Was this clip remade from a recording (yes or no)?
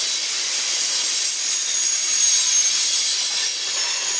no